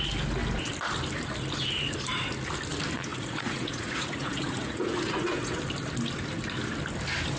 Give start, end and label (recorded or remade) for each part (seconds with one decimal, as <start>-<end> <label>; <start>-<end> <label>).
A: 0.0-3.1 recorded; 3.1-5.6 remade; 5.6-7.4 recorded